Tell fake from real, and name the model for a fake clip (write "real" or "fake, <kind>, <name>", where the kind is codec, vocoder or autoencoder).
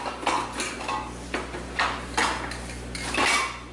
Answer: real